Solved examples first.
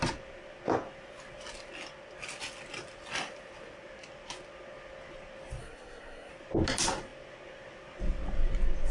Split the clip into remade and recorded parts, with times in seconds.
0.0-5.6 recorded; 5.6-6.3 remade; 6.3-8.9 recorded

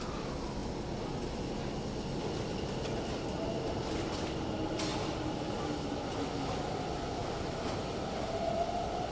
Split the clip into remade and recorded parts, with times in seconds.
0.0-9.1 recorded

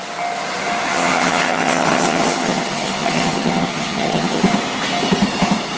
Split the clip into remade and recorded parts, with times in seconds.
0.0-0.9 recorded; 0.9-4.4 remade; 4.4-5.8 recorded

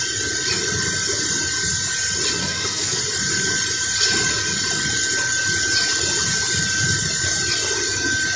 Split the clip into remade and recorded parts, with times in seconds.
0.0-2.4 recorded; 2.4-3.0 remade; 3.0-8.4 recorded